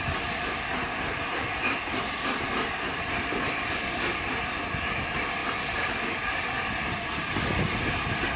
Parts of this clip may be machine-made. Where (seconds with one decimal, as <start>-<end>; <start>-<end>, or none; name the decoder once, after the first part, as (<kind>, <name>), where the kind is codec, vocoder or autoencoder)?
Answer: none